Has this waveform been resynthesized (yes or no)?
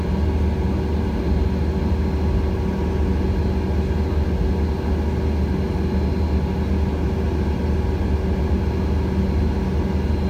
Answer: no